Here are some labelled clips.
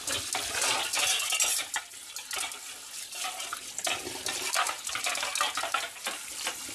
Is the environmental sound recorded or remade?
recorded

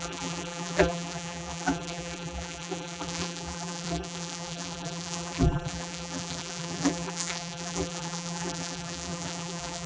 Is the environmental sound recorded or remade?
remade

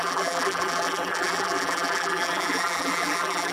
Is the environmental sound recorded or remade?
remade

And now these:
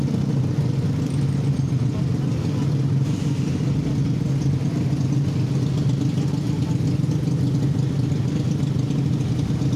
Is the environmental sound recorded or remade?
recorded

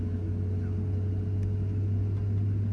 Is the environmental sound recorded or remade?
recorded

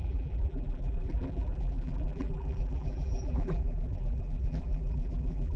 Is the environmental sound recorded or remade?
remade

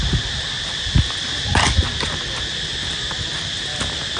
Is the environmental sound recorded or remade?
recorded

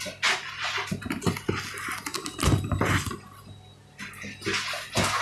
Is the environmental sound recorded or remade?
recorded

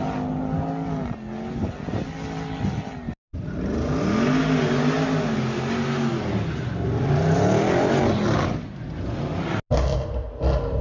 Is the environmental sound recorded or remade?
recorded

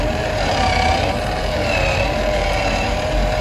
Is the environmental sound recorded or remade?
remade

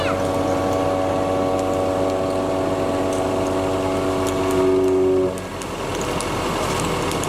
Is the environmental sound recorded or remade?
recorded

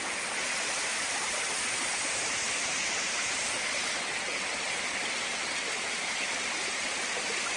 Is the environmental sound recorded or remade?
recorded